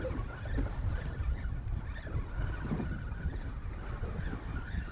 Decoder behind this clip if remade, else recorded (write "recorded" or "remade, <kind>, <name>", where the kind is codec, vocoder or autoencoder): remade, vocoder, BigVGAN v2